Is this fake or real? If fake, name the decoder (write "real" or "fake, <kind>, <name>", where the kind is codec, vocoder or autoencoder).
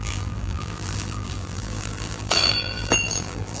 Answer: fake, vocoder, BigVGAN v2